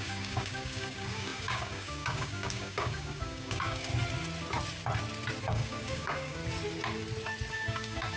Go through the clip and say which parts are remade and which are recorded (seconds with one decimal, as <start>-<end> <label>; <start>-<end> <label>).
0.0-3.9 remade; 3.9-5.4 recorded; 5.4-6.4 remade; 6.4-7.5 recorded; 7.5-8.2 remade